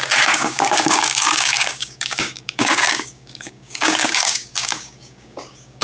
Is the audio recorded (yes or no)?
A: no